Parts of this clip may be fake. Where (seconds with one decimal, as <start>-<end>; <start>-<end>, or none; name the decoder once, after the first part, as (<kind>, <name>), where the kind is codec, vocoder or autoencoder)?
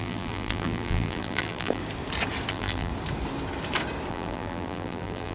0.0-1.8 (vocoder, BigVGAN v2); 2.5-2.9; 4.1-5.3